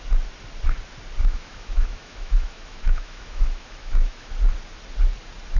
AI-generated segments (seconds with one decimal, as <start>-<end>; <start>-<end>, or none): 1.2-4.3